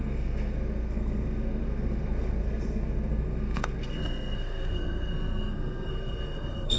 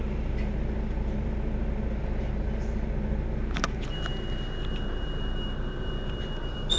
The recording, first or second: second